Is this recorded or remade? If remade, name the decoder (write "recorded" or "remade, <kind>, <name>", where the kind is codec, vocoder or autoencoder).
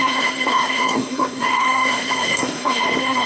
remade, codec, SNAC